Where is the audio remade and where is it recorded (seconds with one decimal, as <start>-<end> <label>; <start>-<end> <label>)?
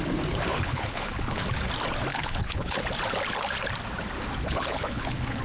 0.0-0.5 recorded; 0.5-1.4 remade; 1.4-2.1 recorded; 2.1-2.8 remade; 2.8-4.4 recorded; 4.4-5.4 remade